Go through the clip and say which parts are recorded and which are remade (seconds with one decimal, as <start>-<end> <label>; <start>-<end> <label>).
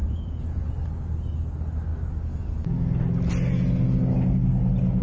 0.0-0.7 remade; 0.7-5.0 recorded